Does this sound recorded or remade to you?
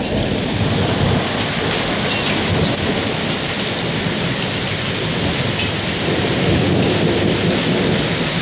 recorded